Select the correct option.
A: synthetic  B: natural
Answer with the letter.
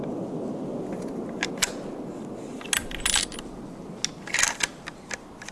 B